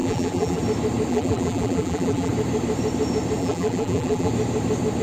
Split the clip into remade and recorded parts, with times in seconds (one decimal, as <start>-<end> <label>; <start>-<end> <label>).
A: 0.0-0.6 remade; 0.6-1.1 recorded; 1.1-2.3 remade; 2.3-3.4 recorded; 3.4-4.3 remade; 4.3-5.0 recorded